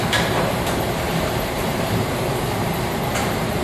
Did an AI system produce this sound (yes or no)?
yes